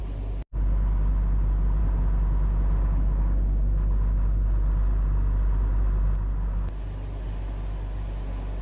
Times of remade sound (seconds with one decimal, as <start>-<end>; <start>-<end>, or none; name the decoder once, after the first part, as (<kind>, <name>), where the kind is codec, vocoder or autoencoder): none